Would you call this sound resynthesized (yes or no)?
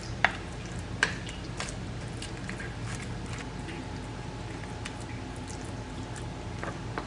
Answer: no